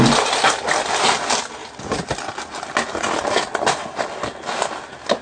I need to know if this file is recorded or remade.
recorded